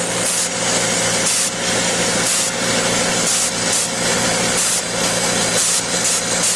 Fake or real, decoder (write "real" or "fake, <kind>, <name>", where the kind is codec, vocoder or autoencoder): real